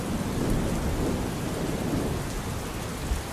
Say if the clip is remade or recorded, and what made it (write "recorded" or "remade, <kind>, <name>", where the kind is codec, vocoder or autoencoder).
recorded